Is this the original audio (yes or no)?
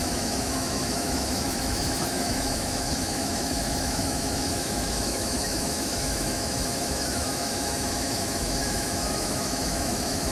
no